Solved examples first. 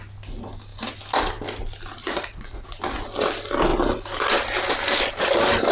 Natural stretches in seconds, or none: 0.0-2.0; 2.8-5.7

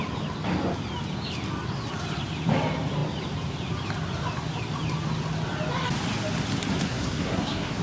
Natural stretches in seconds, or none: 0.0-6.8

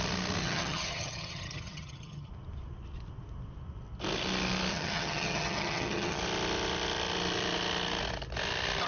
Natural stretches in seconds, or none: 0.0-0.4; 2.3-4.7; 6.2-8.9

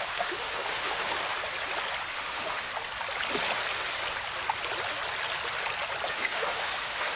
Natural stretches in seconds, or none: 1.0-2.1; 2.7-6.1

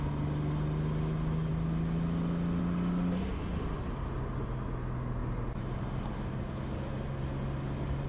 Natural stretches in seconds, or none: 0.0-8.1